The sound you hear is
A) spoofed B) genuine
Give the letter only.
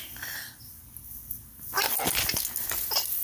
B